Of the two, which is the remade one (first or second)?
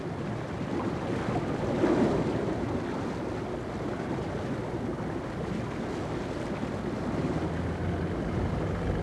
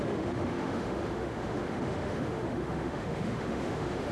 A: second